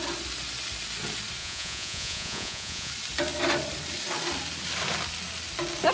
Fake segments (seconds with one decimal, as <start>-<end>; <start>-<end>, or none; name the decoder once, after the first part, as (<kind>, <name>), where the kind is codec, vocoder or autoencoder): 1.4-2.9 (vocoder, Vocos)